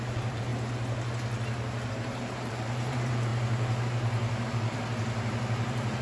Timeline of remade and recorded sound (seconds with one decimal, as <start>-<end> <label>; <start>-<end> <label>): 0.0-0.5 remade; 0.5-1.9 recorded; 1.9-3.3 remade; 3.3-4.5 recorded; 4.5-6.0 remade